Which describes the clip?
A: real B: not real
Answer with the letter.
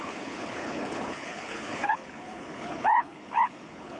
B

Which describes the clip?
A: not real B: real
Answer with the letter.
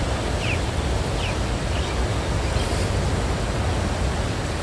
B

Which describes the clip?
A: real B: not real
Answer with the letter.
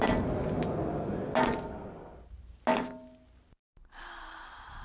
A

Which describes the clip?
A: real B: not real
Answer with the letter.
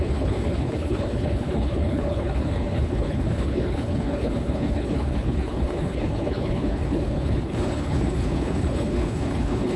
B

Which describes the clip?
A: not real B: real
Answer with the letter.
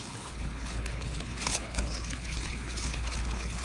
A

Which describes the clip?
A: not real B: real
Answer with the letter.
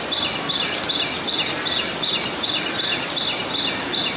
B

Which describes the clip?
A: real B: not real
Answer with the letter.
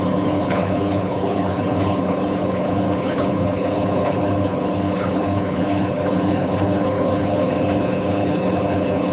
B